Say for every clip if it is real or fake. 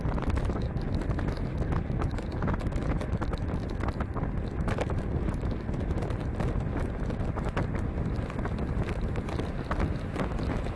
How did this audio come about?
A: real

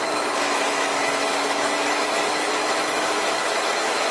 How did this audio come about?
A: fake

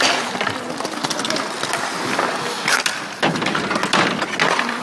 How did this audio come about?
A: real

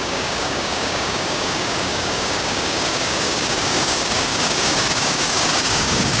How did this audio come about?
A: fake